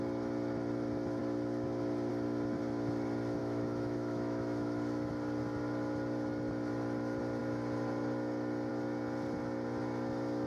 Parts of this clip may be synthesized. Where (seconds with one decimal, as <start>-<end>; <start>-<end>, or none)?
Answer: 3.4-5.1